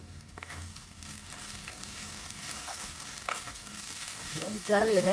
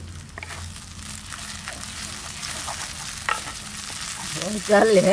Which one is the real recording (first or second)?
second